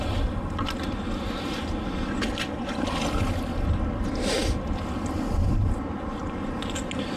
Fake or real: real